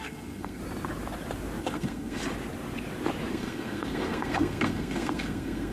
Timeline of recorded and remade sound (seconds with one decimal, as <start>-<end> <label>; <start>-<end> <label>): 0.0-0.6 remade; 0.6-1.6 recorded; 1.6-2.2 remade; 2.2-3.3 recorded; 3.3-5.7 remade